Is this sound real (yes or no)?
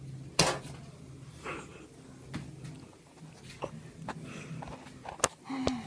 yes